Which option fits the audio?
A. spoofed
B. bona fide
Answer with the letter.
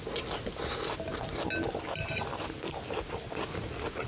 B